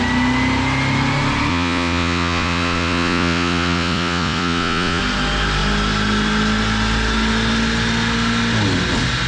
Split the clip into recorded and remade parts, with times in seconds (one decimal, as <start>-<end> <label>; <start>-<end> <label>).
0.0-1.5 recorded; 1.5-5.0 remade; 5.0-9.3 recorded